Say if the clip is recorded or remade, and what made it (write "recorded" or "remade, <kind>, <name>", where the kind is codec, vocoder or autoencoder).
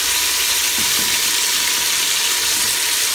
recorded